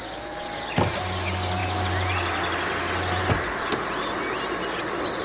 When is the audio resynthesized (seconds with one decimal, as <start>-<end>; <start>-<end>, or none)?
none

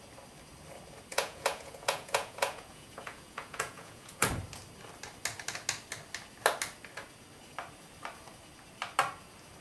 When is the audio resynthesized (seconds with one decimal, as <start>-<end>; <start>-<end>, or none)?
1.1-4.3

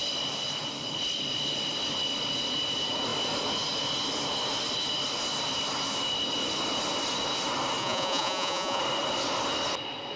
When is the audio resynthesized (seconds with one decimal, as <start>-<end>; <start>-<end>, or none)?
7.8-8.8

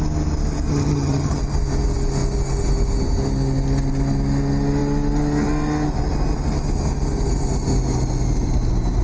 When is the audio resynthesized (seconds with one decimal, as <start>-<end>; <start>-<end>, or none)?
0.7-1.4

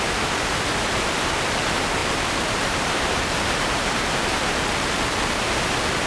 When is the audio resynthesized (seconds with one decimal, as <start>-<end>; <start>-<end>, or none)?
2.0-4.7

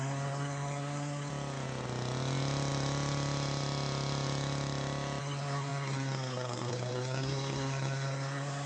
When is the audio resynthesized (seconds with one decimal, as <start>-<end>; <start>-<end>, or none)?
0.0-1.3; 5.2-8.7